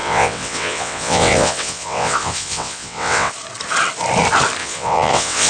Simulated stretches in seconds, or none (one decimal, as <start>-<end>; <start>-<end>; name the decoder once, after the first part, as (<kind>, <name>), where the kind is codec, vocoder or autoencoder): 0.0-3.3 (vocoder, WaveNeXt); 4.6-5.5